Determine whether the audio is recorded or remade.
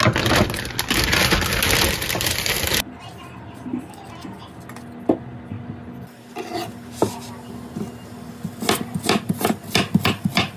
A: recorded